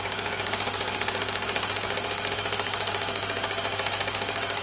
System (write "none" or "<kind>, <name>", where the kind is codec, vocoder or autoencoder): codec, DAC